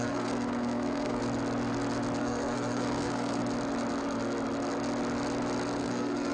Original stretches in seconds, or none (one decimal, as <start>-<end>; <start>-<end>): 1.2-2.2; 3.4-5.8